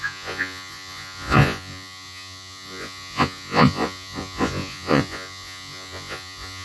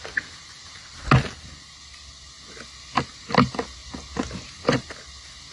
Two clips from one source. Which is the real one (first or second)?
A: second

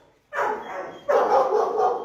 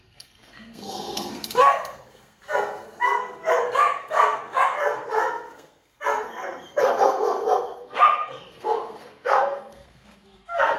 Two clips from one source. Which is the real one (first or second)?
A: first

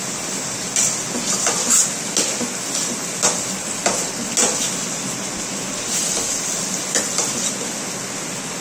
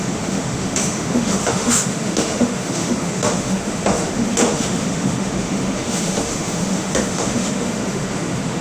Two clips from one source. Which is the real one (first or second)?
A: first